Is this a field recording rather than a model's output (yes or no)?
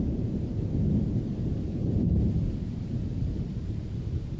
no